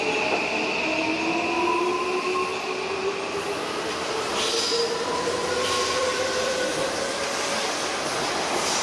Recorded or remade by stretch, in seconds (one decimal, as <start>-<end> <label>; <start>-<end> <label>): 0.0-2.5 recorded; 2.5-6.7 remade; 6.7-8.8 recorded